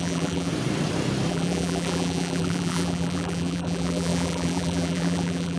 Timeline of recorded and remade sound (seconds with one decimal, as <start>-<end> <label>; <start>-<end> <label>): 0.0-0.5 remade; 0.5-1.3 recorded; 1.3-5.6 remade